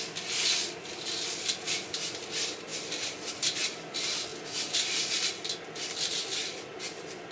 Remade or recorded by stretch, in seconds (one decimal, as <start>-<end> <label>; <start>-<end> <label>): 0.0-7.3 recorded